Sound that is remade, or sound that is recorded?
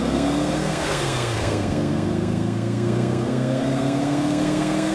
remade